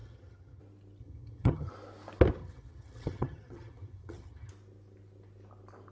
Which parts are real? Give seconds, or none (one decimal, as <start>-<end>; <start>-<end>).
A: 0.6-1.0; 1.7-2.4; 4.5-5.9